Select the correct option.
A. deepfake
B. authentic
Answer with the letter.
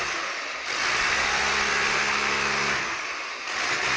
B